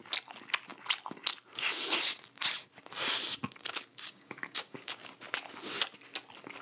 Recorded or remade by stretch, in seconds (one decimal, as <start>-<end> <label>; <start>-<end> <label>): 0.0-3.9 recorded; 3.9-5.2 remade; 5.2-6.6 recorded